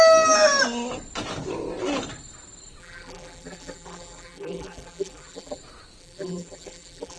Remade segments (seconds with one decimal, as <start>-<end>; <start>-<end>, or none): 2.8-5.6; 6.0-7.2